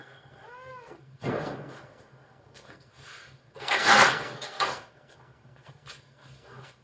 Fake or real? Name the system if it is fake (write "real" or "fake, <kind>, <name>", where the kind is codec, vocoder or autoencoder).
fake, codec, SNAC